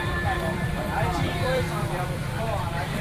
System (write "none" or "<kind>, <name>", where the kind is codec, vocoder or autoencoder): vocoder, BigVGAN v2